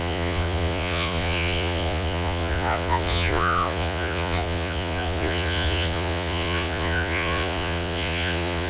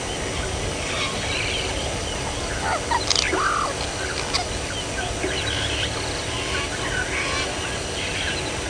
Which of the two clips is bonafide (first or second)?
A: second